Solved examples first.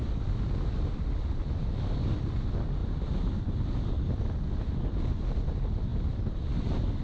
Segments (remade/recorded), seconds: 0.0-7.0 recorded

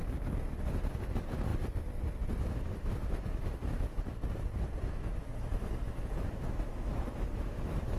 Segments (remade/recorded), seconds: 0.0-1.0 recorded; 1.0-1.5 remade; 1.5-2.4 recorded; 2.4-4.2 remade; 4.2-4.8 recorded; 4.8-5.3 remade; 5.3-5.8 recorded; 5.8-8.0 remade

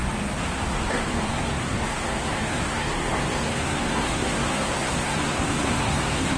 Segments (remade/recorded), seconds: 0.0-0.9 recorded; 0.9-6.4 remade

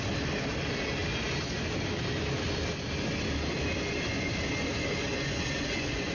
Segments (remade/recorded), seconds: 0.0-5.1 recorded; 5.1-6.1 remade

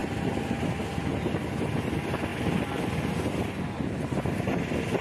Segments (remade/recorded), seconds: 0.0-5.0 recorded

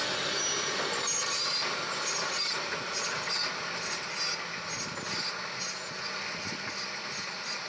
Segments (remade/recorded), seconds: 0.0-7.7 recorded